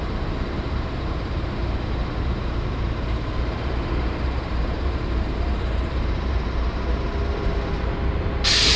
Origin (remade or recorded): remade